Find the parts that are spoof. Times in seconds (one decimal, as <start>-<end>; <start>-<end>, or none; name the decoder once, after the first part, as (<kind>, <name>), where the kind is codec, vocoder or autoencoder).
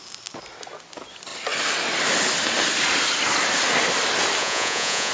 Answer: 4.4-5.1 (vocoder, Vocos)